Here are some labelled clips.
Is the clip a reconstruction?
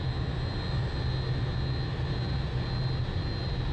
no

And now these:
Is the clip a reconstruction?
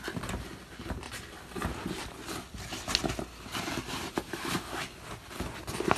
no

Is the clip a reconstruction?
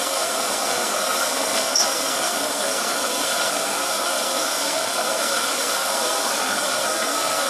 yes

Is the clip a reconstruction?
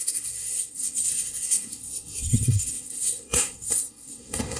yes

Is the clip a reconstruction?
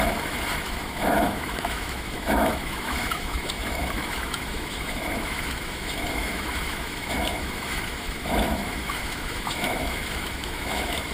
yes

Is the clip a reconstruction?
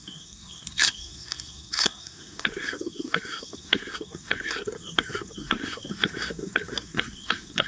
yes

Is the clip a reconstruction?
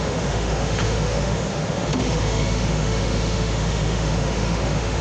yes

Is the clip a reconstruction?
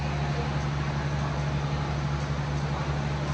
no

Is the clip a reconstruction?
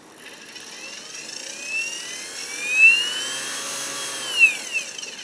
no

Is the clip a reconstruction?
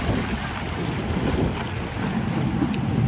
no